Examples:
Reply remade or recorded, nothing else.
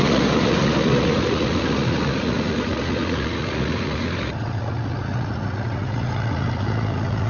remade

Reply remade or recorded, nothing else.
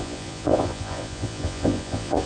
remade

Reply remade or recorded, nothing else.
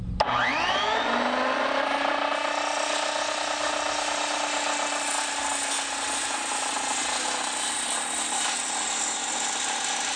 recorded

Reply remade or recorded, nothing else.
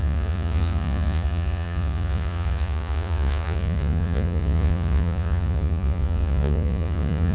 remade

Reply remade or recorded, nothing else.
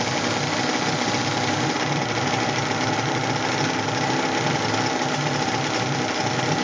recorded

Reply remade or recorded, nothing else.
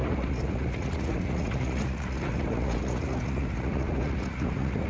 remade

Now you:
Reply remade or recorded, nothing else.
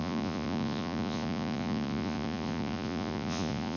remade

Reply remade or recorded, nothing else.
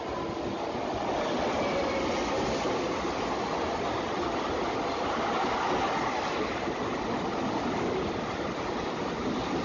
recorded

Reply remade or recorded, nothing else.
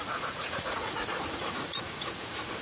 remade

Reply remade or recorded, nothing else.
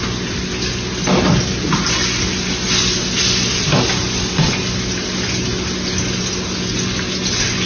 recorded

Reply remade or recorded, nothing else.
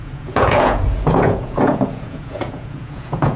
remade